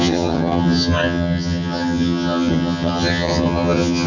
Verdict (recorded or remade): remade